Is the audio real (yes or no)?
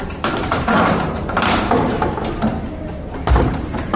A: no